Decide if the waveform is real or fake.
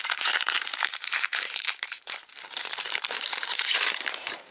fake